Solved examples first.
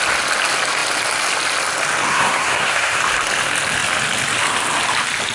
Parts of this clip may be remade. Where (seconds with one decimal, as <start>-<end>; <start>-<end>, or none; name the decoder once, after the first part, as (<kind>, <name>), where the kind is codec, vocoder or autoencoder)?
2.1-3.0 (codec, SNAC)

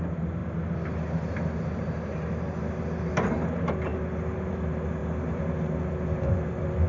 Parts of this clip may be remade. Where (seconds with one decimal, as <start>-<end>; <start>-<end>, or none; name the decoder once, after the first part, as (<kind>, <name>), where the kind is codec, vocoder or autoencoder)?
none

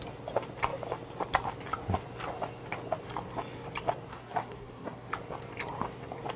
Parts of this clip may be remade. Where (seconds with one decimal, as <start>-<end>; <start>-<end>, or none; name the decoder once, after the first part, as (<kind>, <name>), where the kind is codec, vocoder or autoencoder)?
4.1-5.1 (codec, SNAC)

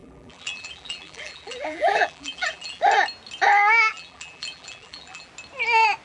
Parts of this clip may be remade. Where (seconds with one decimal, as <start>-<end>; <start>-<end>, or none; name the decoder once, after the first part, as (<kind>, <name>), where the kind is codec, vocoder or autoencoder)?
0.0-2.8 (vocoder, BigVGAN v2); 3.9-5.3

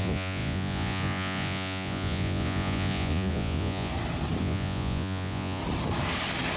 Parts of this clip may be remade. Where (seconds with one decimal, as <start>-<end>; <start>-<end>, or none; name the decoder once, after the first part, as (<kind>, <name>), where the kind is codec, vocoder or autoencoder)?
0.0-3.9 (vocoder, Vocos); 4.4-5.6

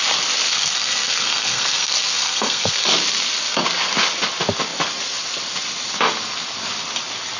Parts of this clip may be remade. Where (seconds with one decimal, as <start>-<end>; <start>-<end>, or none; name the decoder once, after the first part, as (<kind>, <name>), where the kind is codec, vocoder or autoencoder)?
0.5-2.9 (codec, SNAC)

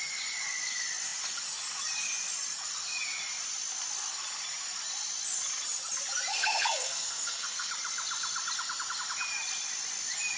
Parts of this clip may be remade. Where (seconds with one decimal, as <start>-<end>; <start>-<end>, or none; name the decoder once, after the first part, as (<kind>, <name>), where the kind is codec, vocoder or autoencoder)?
6.3-7.7 (codec, SNAC)

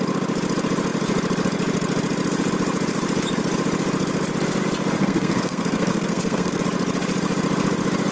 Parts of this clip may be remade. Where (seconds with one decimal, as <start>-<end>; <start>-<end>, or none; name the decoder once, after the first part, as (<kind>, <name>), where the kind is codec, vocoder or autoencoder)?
5.0-6.6 (codec, SNAC)